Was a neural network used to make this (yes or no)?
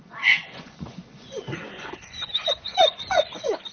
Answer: yes